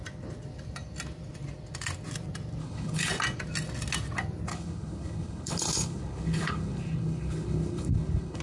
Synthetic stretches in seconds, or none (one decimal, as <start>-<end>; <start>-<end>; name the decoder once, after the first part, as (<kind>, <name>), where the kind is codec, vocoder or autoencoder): 2.6-3.1 (codec, HILCodec); 4.5-8.4